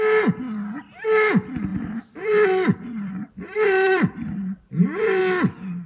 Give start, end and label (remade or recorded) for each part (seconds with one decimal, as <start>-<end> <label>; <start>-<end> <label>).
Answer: 0.0-1.7 recorded; 1.7-5.2 remade; 5.2-5.9 recorded